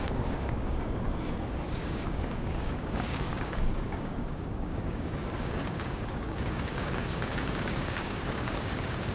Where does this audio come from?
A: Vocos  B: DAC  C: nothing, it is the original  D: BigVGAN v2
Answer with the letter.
B